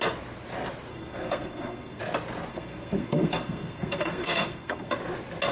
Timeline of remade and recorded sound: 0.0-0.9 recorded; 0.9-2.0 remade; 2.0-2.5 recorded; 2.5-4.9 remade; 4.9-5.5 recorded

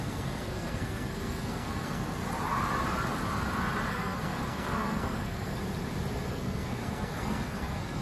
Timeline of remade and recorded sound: 0.0-2.2 remade; 2.2-3.9 recorded; 3.9-5.6 remade; 5.6-6.3 recorded; 6.3-8.0 remade